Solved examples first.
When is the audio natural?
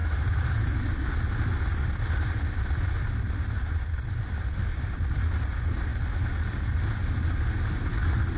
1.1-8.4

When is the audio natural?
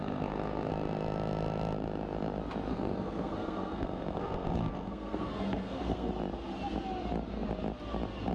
0.7-2.7; 6.1-8.3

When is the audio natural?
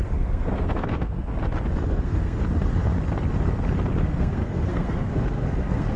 1.3-1.9; 2.4-4.0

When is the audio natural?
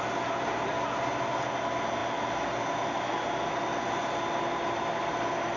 0.0-5.6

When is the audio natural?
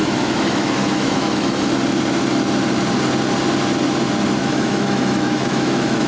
1.6-4.4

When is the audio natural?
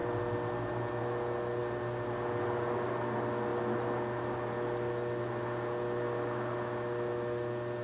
1.0-3.5; 5.2-7.8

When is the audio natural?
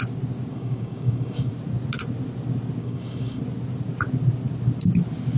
0.0-0.5; 1.5-2.8; 3.4-5.4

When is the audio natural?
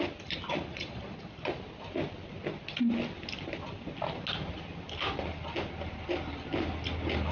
0.0-0.7; 1.6-7.3